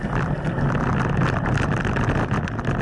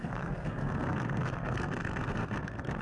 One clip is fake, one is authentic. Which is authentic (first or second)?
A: first